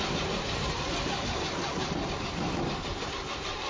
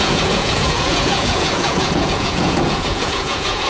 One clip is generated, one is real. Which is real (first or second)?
first